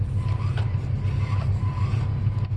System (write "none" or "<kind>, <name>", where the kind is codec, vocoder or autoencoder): vocoder, BigVGAN v2